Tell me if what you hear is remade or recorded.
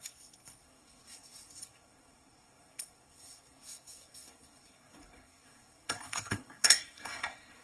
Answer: remade